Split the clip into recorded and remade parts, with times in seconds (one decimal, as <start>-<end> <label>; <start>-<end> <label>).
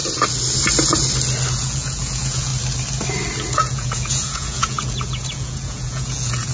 0.0-1.5 recorded; 1.5-2.5 remade; 2.5-3.5 recorded; 3.5-6.5 remade